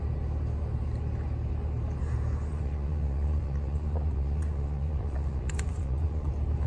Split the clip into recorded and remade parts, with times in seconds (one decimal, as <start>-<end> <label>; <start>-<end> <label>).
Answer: 0.0-2.5 recorded; 2.5-6.3 remade; 6.3-6.7 recorded